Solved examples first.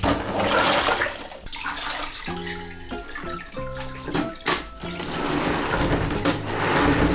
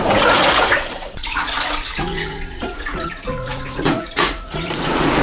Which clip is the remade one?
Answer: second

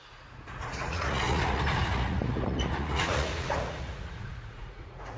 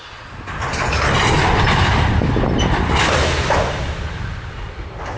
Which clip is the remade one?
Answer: first